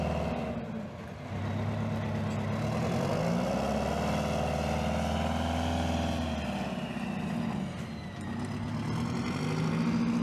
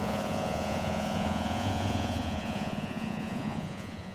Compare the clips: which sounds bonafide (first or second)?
first